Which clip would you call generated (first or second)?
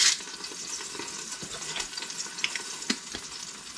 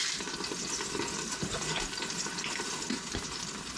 second